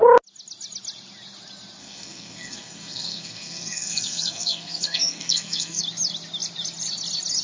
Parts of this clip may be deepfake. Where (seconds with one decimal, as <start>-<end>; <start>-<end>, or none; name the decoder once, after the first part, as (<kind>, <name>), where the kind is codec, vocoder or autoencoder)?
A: 1.8-5.8 (codec, SNAC)